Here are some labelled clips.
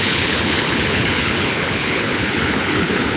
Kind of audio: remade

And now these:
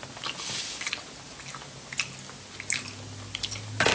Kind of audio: recorded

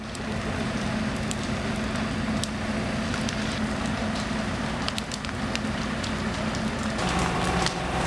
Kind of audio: recorded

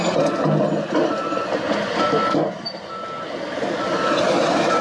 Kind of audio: recorded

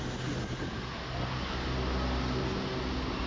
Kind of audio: recorded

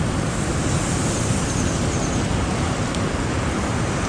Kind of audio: recorded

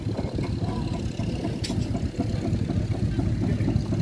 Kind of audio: recorded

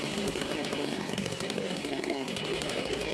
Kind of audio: remade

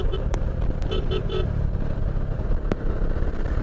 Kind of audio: remade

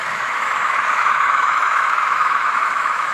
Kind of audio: remade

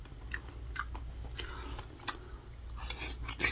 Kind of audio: recorded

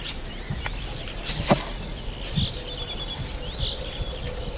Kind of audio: recorded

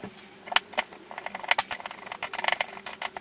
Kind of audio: recorded